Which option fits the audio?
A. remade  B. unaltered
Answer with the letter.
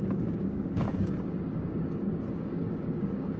A